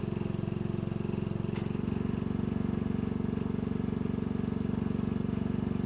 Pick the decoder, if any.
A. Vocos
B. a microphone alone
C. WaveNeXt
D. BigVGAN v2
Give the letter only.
B